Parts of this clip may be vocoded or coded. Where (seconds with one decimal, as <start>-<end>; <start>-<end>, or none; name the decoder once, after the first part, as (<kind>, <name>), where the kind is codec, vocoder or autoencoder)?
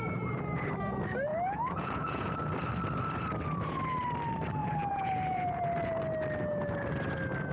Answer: 1.3-2.3 (vocoder, Vocos); 4.6-6.0